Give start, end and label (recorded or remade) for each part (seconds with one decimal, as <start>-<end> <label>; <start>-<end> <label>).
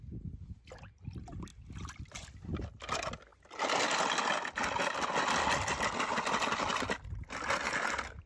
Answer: 0.0-8.3 recorded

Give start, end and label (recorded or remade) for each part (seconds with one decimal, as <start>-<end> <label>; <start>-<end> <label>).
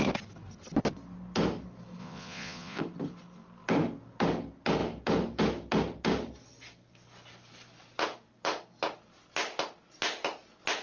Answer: 0.0-2.0 recorded; 2.0-2.8 remade; 2.8-10.8 recorded